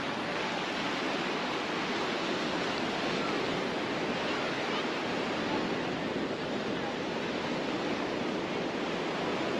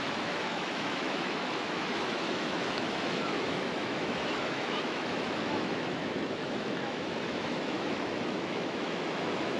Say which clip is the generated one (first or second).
second